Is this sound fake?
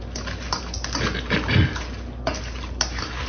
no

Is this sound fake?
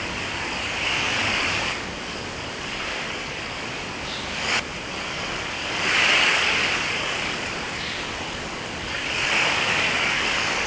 yes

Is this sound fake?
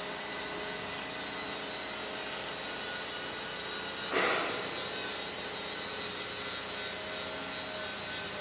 no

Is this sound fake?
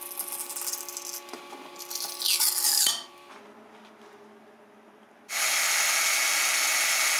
no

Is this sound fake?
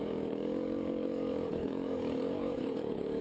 yes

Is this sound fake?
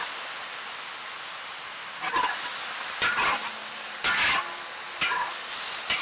no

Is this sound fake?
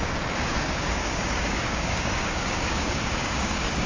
yes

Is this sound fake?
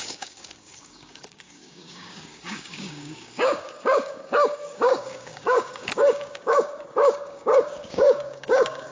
yes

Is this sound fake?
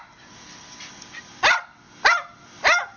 no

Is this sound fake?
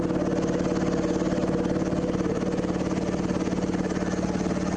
no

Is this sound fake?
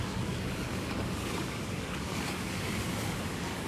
yes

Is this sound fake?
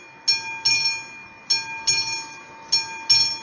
no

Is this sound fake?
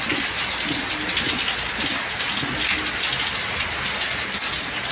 no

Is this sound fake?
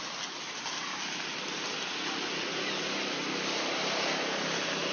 no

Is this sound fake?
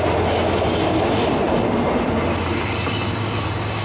no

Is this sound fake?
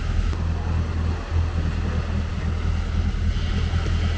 no